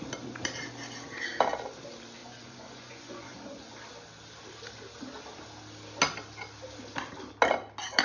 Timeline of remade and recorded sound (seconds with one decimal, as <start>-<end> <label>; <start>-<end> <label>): 0.0-2.2 recorded; 2.2-3.7 remade; 3.7-8.0 recorded